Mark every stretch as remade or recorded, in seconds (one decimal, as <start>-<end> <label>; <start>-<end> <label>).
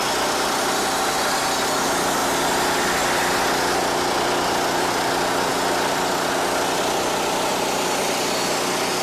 0.0-9.0 recorded